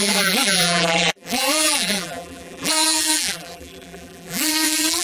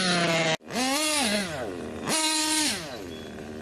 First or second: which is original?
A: second